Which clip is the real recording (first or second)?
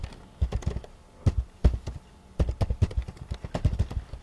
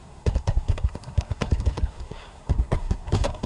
first